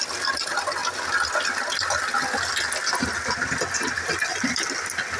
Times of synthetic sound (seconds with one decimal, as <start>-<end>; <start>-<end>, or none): none